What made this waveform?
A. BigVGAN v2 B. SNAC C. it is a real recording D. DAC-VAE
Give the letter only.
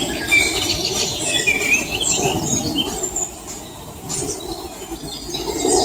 C